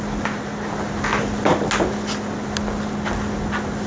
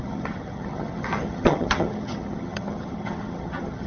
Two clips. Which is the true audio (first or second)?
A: first